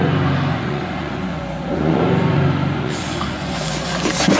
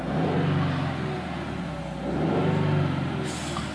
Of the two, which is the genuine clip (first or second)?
second